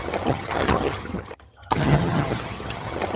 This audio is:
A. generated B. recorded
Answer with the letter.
A